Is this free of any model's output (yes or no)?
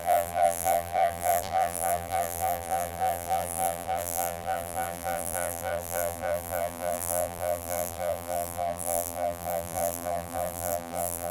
no